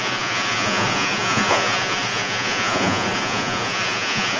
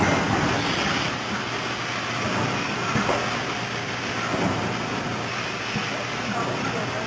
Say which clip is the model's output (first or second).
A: first